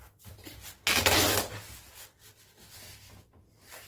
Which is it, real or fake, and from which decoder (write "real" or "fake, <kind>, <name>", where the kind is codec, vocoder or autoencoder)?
real